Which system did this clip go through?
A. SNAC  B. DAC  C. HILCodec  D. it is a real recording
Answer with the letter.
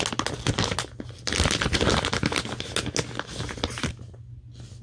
D